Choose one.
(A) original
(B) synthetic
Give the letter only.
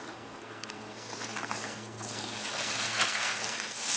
B